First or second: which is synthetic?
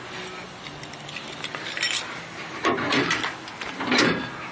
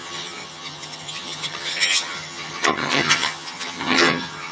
second